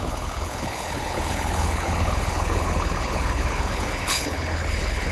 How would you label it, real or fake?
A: fake